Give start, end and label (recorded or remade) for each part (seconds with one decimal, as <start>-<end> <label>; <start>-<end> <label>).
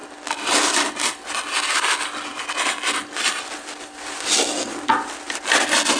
0.0-6.0 recorded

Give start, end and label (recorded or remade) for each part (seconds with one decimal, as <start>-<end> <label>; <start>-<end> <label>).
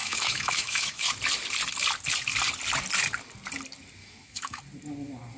0.0-1.1 remade; 1.1-4.0 recorded; 4.0-4.6 remade; 4.6-5.4 recorded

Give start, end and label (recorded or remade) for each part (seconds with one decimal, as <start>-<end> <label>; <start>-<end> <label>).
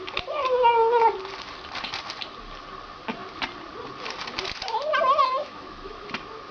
0.0-5.2 recorded; 5.2-6.1 remade; 6.1-6.5 recorded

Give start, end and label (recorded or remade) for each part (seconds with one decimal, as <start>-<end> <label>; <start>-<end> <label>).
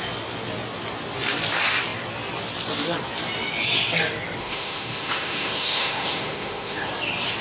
0.0-4.4 recorded; 4.4-6.9 remade; 6.9-7.4 recorded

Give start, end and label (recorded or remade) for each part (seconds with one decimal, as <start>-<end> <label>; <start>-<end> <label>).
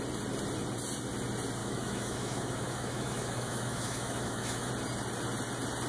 0.0-1.6 recorded; 1.6-4.7 remade; 4.7-5.9 recorded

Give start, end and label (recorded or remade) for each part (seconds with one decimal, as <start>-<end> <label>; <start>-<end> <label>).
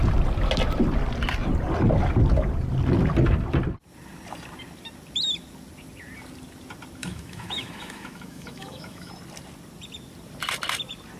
0.0-7.0 recorded; 7.0-9.1 remade; 9.1-11.2 recorded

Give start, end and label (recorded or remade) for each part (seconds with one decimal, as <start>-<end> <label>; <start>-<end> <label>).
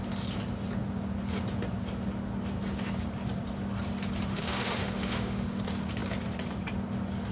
0.0-4.3 recorded; 4.3-5.6 remade; 5.6-7.3 recorded